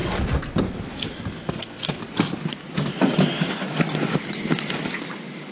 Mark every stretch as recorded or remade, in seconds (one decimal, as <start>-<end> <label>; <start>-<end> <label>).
0.0-1.5 recorded; 1.5-2.0 remade; 2.0-5.5 recorded